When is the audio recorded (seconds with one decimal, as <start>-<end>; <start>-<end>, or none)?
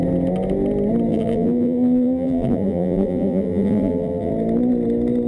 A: 0.0-1.1; 4.3-5.3